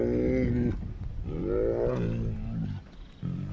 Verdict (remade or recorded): recorded